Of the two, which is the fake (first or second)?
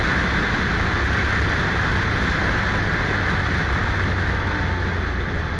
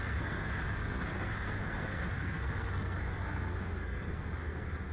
second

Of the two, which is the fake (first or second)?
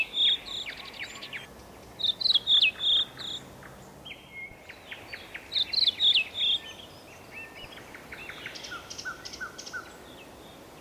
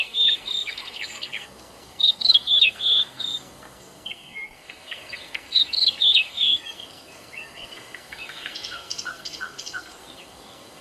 second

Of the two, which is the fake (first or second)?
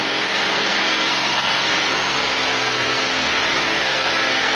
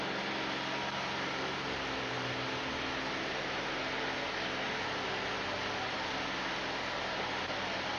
first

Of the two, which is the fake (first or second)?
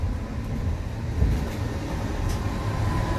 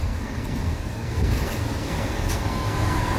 second